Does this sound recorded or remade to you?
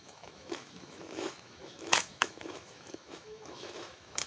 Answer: remade